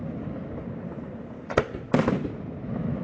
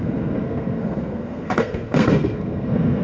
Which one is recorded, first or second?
first